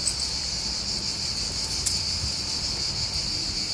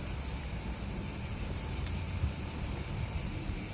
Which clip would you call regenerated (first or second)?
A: second